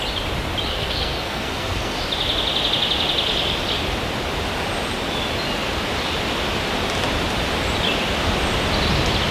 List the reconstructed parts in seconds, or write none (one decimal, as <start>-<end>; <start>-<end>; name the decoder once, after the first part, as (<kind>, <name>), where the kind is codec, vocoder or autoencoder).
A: 0.7-2.0 (codec, SNAC)